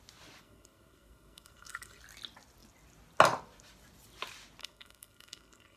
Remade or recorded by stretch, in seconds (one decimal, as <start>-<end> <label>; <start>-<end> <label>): 0.0-0.4 recorded; 0.4-2.0 remade; 2.0-4.6 recorded; 4.6-5.8 remade